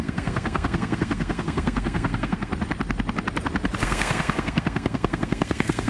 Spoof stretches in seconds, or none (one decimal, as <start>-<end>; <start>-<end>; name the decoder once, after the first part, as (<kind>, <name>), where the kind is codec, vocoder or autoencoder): 0.0-2.5 (codec, SNAC); 3.8-5.9